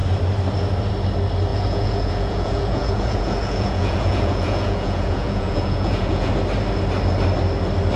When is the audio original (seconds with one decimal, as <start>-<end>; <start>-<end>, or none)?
0.0-1.5; 6.3-8.0